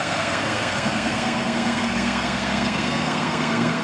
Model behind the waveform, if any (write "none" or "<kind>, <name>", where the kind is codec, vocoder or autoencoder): codec, SNAC